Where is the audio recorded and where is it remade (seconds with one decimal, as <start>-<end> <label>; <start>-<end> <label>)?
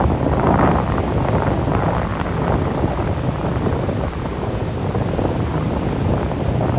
0.0-2.1 recorded; 2.1-6.2 remade; 6.2-6.8 recorded